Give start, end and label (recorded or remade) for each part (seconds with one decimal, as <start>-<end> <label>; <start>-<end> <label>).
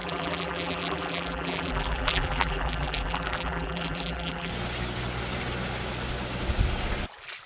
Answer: 0.0-4.5 remade; 4.5-7.5 recorded